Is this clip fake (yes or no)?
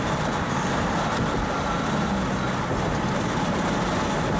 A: no